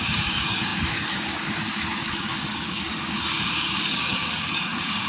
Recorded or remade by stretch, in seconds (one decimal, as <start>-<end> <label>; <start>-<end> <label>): 0.0-5.1 remade